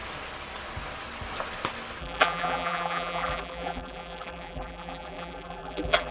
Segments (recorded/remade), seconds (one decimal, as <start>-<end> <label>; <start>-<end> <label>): 0.0-2.0 recorded; 2.0-6.1 remade